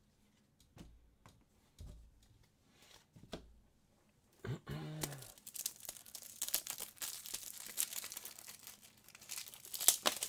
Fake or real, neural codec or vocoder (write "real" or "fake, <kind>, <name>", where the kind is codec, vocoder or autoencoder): real